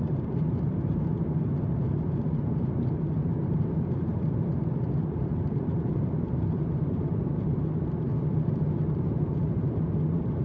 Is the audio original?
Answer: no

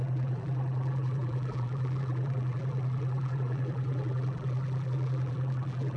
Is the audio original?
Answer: no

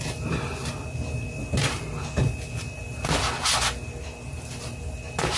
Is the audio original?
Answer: yes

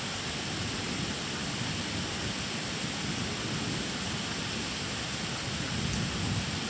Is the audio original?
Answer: yes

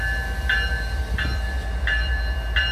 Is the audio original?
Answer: yes